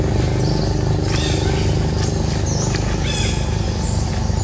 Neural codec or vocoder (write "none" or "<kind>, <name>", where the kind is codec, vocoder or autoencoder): none